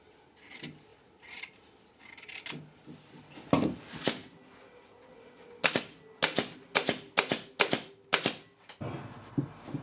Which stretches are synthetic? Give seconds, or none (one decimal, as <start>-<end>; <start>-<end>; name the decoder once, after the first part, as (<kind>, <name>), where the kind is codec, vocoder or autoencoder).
0.9-1.4 (vocoder, BigVGAN v2)